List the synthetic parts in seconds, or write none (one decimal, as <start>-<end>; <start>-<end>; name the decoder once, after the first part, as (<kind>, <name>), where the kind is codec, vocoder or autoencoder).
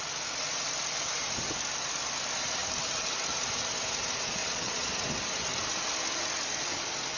4.4-5.0 (vocoder, Vocos)